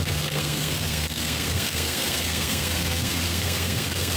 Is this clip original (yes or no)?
no